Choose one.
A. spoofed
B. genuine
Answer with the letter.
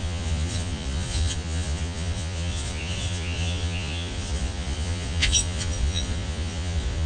A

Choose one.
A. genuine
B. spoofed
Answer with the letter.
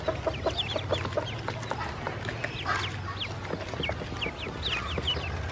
A